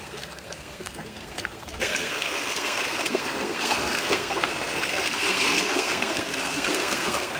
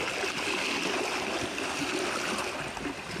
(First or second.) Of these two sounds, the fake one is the first